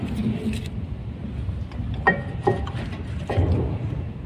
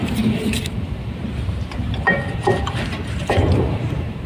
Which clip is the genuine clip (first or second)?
first